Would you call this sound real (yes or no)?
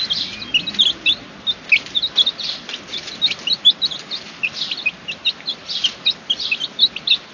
yes